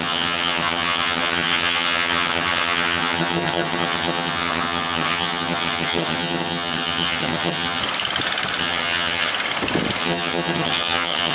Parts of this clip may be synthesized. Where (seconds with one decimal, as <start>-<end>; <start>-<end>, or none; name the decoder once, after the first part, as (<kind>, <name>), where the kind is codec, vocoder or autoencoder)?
0.0-7.8 (vocoder, HiFi-GAN); 8.6-9.3; 10.0-11.3